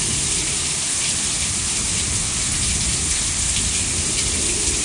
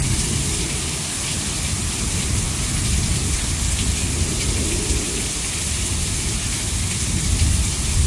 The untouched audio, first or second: first